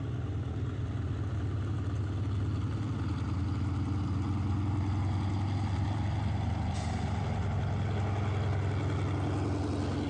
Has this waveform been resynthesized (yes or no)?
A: no